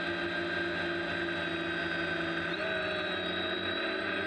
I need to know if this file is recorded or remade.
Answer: recorded